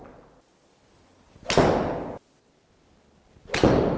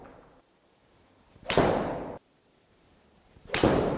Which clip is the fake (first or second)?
second